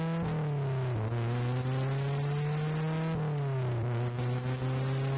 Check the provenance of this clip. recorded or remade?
recorded